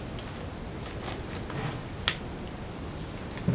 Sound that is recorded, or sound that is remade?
recorded